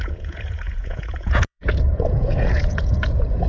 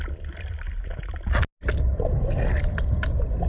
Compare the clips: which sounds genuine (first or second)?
second